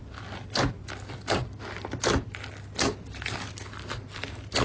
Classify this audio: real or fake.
real